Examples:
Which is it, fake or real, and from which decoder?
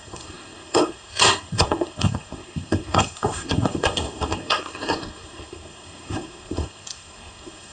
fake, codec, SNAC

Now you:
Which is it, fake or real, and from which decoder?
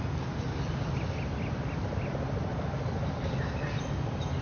real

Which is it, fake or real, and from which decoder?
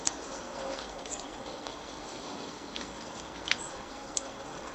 fake, codec, SNAC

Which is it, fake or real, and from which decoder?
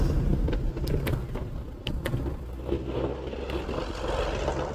real